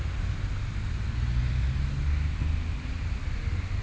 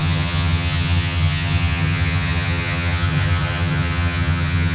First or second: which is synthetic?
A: second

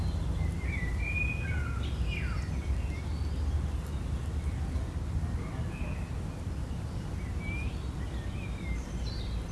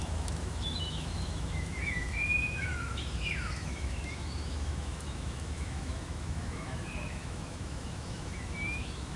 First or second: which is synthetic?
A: second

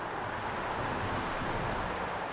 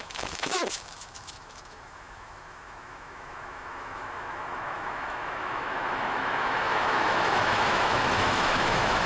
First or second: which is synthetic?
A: second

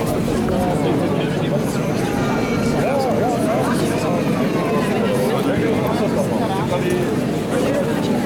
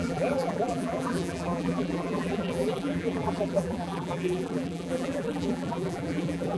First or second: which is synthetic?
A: second